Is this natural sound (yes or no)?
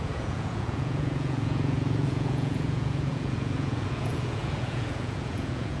no